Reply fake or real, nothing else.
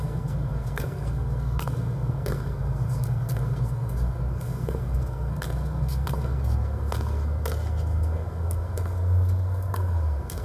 fake